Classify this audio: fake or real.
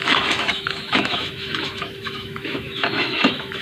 fake